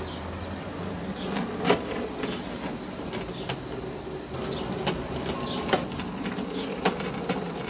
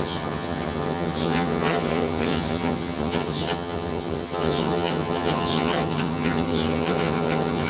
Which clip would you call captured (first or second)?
first